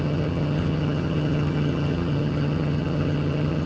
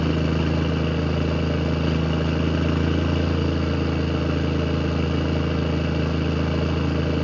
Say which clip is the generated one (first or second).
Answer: first